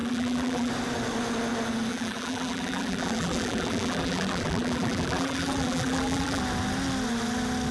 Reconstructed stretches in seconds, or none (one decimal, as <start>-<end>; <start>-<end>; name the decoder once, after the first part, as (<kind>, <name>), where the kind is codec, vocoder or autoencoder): 0.0-0.7 (vocoder, BigVGAN v2); 1.9-6.4